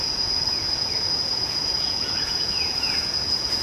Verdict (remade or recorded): remade